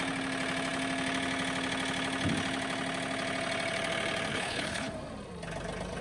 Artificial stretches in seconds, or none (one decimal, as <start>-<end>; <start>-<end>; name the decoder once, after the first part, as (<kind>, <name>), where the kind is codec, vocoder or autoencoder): 4.3-4.9 (codec, HILCodec)